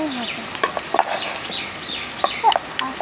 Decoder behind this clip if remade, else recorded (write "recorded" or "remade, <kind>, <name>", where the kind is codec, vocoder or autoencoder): recorded